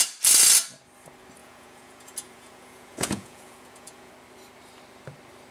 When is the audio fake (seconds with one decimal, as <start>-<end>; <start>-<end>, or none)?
1.4-4.1